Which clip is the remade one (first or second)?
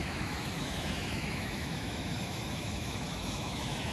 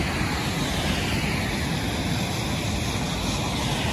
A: first